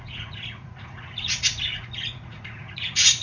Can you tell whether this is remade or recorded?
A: remade